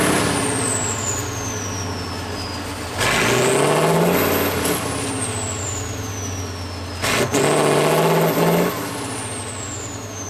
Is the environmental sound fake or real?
real